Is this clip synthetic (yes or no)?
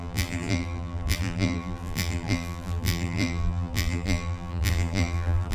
yes